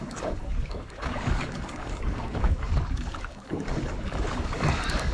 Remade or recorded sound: remade